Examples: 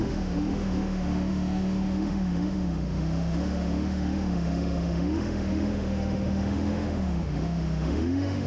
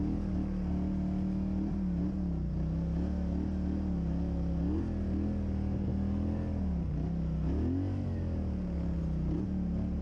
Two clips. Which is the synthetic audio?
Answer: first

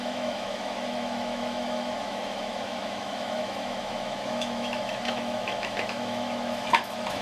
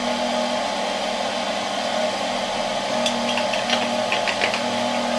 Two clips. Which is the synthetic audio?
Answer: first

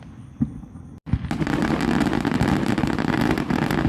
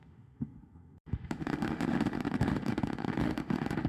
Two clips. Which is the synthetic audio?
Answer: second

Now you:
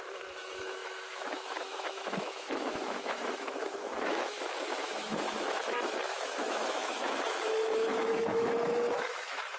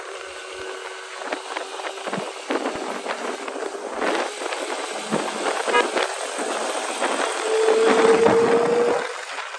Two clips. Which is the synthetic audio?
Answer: first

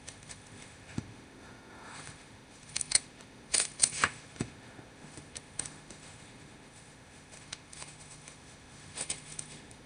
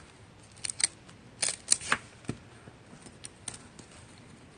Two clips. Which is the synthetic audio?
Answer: first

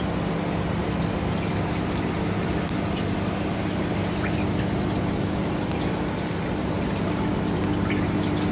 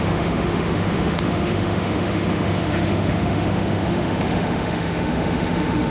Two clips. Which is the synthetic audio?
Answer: second